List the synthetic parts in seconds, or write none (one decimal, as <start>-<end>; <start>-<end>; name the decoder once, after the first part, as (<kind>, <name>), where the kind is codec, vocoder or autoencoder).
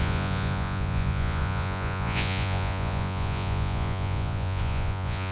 0.0-5.3 (vocoder, Vocos)